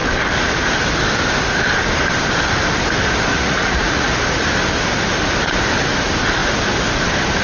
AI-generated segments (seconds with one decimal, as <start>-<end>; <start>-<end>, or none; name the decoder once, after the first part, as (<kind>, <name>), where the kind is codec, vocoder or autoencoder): 3.3-4.1 (vocoder, Vocos)